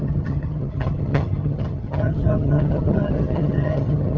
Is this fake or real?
fake